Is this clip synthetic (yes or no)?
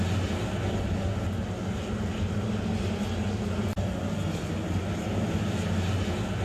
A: no